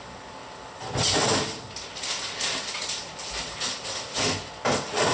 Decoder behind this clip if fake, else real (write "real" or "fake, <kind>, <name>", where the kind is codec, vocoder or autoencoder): real